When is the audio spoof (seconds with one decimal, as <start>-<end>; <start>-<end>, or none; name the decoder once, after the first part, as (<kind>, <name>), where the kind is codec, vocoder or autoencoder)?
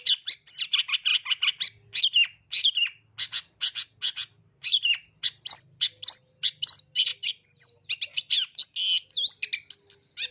none